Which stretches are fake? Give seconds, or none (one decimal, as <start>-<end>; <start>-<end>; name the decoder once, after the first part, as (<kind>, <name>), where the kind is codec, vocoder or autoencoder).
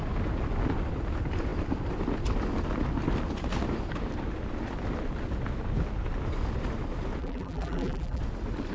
7.2-8.2 (vocoder, BigVGAN v2)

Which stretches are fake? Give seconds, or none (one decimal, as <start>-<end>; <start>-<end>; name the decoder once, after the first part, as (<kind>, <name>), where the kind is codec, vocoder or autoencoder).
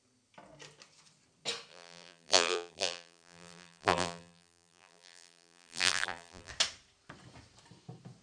1.7-6.5 (vocoder, BigVGAN v2)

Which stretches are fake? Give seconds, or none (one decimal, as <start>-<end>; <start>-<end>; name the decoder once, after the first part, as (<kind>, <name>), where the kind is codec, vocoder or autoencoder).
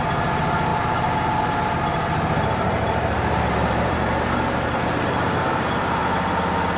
0.0-6.0 (vocoder, BigVGAN v2)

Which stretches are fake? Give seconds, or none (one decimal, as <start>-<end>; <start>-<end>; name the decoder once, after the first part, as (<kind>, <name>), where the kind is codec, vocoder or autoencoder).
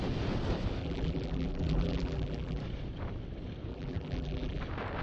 0.8-2.6 (vocoder, BigVGAN v2); 3.7-4.6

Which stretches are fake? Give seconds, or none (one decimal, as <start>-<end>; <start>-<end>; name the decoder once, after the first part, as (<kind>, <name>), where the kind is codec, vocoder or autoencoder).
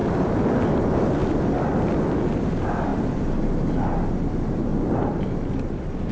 0.0-0.6 (vocoder, BigVGAN v2); 2.9-3.5; 4.7-5.2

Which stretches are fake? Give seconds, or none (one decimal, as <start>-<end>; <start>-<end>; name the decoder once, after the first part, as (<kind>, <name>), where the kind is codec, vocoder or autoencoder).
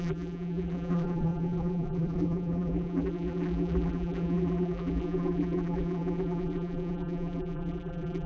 0.0-8.3 (vocoder, BigVGAN v2)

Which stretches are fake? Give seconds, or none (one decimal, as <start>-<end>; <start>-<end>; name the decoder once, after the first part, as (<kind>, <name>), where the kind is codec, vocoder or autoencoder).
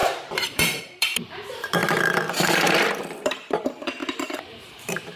0.0-4.0 (vocoder, BigVGAN v2); 4.6-5.2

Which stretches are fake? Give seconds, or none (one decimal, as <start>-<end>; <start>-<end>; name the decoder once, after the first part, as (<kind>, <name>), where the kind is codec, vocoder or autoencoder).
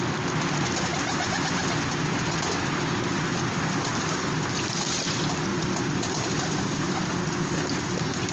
5.5-6.8 (vocoder, BigVGAN v2)